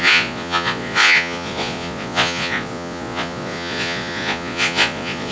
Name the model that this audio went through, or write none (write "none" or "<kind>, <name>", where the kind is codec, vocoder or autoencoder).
vocoder, Vocos